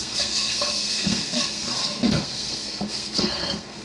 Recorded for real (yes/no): no